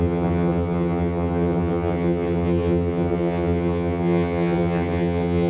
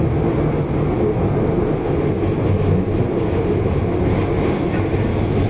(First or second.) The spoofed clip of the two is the first